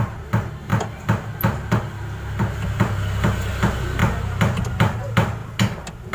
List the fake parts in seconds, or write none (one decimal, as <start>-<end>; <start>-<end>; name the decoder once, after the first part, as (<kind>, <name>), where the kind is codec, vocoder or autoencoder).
none